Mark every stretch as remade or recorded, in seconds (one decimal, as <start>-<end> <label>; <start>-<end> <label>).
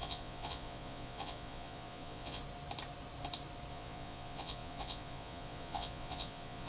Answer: 0.0-2.4 remade; 2.4-3.7 recorded; 3.7-6.7 remade